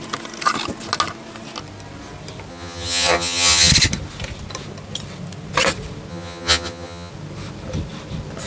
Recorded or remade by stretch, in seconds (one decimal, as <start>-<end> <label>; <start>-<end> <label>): 0.0-2.5 recorded; 2.5-3.7 remade; 3.7-6.1 recorded; 6.1-7.1 remade; 7.1-8.5 recorded